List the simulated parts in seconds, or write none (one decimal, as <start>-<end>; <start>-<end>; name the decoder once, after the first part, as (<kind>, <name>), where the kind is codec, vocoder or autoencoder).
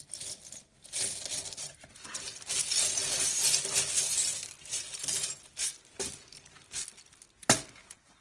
none